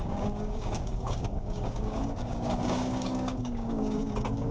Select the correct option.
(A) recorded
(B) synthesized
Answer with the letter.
B